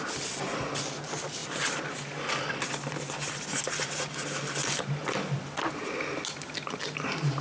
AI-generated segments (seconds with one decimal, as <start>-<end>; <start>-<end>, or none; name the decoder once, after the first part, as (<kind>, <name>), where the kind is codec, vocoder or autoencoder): none